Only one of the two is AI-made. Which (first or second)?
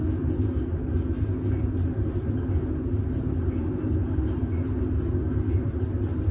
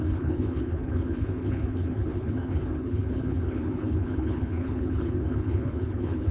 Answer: second